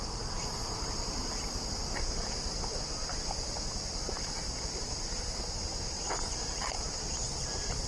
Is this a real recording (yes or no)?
yes